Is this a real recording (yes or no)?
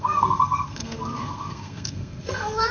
no